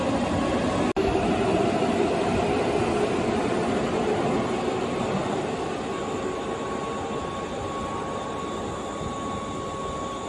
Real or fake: real